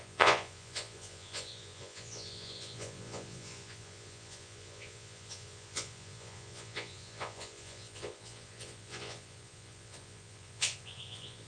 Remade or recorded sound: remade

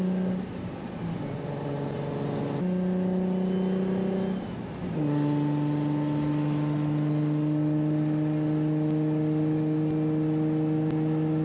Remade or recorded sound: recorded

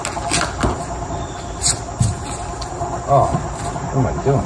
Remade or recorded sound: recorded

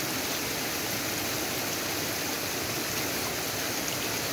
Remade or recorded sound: recorded